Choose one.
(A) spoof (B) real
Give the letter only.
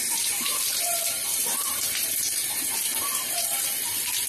B